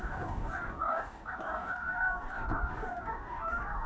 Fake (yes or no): yes